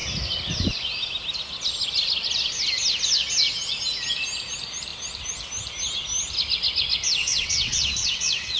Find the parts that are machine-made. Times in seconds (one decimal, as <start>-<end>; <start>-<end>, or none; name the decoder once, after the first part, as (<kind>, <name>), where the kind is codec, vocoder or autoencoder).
7.2-8.6 (vocoder, WaveNeXt)